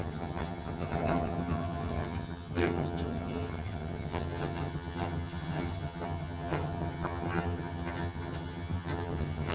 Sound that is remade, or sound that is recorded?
remade